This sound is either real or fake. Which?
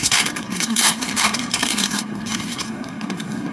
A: fake